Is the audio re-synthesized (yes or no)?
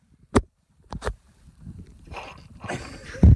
yes